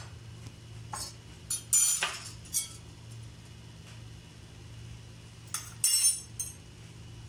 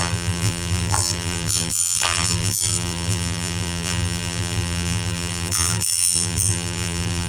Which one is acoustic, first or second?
first